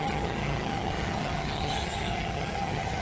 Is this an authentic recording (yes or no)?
no